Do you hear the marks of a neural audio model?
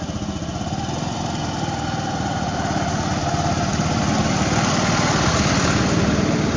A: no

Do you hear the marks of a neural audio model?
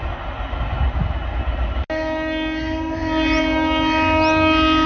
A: no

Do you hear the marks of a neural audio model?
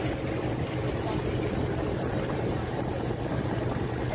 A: no